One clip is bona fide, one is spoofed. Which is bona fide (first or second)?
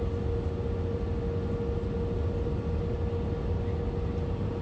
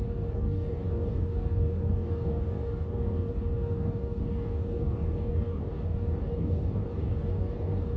first